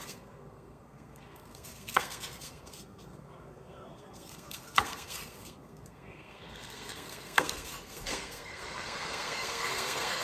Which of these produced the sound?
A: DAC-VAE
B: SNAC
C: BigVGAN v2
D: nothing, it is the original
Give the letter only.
B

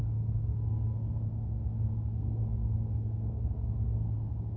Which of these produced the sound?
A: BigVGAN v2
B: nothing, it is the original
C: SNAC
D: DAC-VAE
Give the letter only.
C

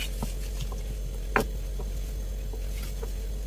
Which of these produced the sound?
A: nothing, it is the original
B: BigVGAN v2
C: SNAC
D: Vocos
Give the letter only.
A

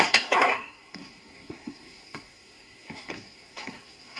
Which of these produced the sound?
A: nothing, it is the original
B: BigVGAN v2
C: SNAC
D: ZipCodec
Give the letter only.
C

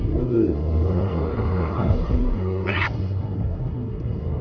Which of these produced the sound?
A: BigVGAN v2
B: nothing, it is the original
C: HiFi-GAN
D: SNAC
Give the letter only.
D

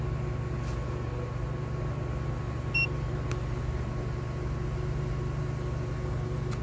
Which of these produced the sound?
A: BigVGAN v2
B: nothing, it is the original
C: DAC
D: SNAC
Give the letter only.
B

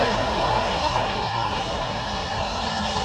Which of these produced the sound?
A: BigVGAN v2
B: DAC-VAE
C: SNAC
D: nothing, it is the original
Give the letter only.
C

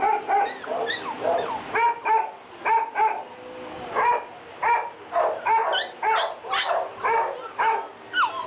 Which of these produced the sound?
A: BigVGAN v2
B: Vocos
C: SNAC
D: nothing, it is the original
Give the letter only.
D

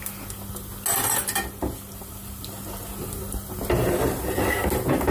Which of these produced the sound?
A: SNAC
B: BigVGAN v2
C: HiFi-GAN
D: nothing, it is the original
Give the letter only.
D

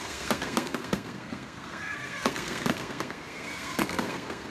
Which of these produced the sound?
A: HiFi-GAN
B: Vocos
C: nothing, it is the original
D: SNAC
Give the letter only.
D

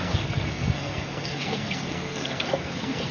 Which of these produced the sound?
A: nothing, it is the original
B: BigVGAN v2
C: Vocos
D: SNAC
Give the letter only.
D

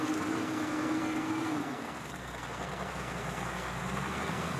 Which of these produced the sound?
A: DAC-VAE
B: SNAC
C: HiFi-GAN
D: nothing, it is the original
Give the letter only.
B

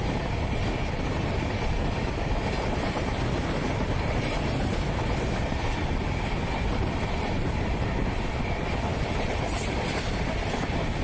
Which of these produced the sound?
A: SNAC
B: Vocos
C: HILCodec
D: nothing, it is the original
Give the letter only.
D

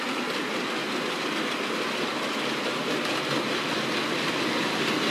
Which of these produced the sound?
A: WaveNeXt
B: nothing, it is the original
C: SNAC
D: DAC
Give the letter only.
B